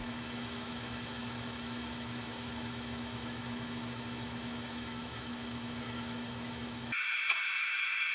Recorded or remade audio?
remade